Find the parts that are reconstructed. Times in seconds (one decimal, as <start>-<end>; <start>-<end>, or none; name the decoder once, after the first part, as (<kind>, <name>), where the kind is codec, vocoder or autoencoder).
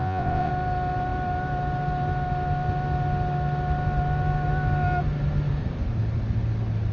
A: 0.0-0.5 (vocoder, Vocos)